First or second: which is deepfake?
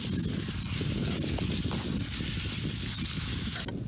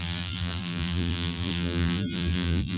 second